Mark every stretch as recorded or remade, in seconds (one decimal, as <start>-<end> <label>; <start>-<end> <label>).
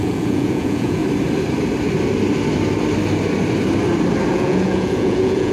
0.0-1.0 remade; 1.0-4.3 recorded; 4.3-5.5 remade